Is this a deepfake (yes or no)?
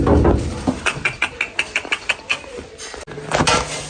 no